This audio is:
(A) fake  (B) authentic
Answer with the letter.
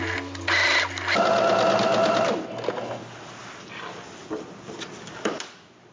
B